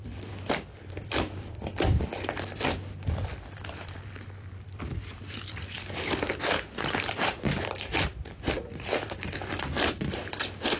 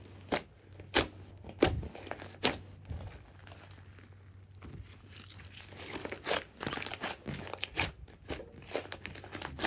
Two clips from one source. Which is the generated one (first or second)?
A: first